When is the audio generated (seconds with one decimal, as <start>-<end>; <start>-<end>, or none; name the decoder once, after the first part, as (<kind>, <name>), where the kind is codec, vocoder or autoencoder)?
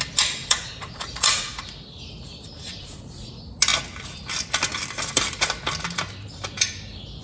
0.4-1.6 (vocoder, Vocos); 2.7-3.3